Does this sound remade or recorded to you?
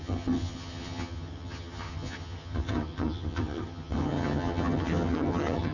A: remade